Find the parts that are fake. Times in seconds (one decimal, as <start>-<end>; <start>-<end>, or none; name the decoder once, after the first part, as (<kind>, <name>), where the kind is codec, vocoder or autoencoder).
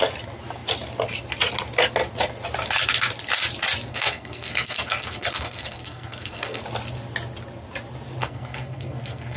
3.9-6.6 (codec, SNAC); 8.2-9.4